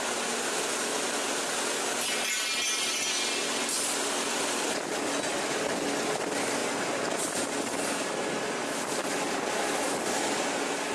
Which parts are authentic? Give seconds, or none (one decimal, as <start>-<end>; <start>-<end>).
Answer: 0.0-10.9